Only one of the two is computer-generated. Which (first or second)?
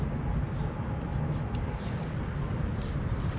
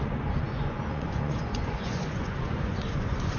second